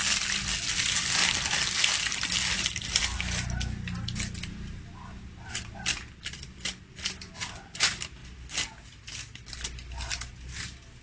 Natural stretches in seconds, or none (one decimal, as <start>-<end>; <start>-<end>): 0.0-11.0